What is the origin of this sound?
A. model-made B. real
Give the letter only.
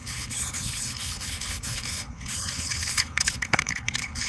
A